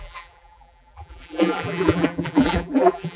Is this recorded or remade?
remade